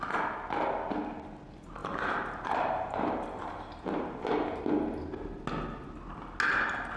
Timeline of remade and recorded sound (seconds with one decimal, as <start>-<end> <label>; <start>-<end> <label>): 0.0-1.8 recorded; 1.8-4.6 remade; 4.6-7.0 recorded

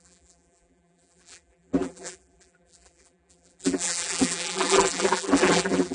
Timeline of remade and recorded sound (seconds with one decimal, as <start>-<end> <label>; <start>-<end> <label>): 0.0-5.9 remade

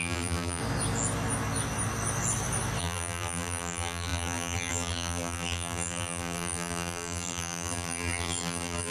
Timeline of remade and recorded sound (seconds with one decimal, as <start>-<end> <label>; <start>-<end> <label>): 0.0-0.6 remade; 0.6-2.8 recorded; 2.8-8.9 remade